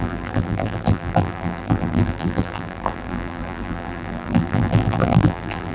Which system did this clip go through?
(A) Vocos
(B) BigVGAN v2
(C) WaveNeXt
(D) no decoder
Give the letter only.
B